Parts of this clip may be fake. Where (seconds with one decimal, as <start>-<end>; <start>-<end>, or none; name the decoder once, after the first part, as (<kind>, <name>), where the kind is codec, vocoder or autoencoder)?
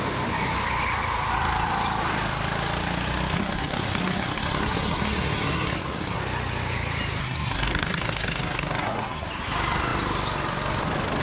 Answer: 3.3-6.2 (codec, SNAC); 7.2-9.3